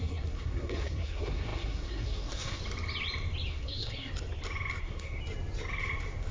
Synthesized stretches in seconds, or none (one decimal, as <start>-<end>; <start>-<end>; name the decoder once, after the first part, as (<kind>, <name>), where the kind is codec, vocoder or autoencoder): 0.0-2.6 (codec, SNAC); 3.5-4.1; 4.8-5.2